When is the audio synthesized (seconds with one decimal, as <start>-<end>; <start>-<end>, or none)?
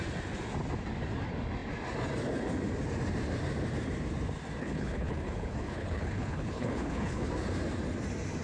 4.6-7.3